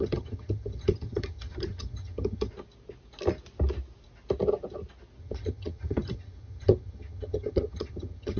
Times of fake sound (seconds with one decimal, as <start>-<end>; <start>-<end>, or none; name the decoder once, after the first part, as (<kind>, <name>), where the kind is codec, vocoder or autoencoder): 0.0-2.5 (vocoder, HiFi-GAN); 5.2-8.4